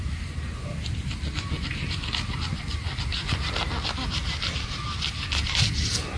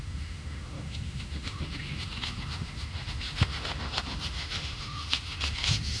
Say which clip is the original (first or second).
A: first